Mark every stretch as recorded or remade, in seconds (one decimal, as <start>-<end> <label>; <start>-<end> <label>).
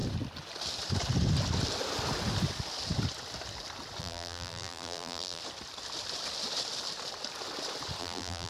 0.0-4.0 recorded; 4.0-5.4 remade; 5.4-8.0 recorded; 8.0-8.5 remade